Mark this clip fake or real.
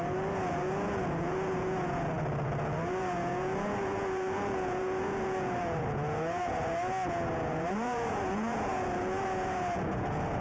fake